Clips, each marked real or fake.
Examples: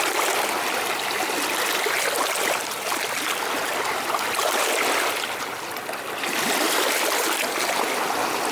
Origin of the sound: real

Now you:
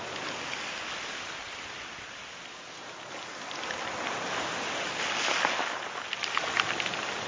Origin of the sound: real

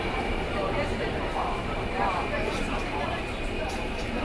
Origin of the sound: fake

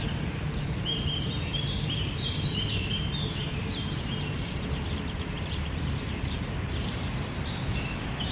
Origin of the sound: fake